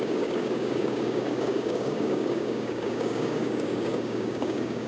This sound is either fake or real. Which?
fake